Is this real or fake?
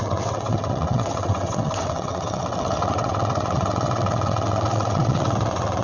fake